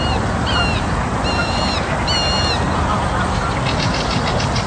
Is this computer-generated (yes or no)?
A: no